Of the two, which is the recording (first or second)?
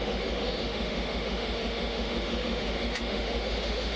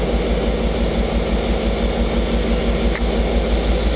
second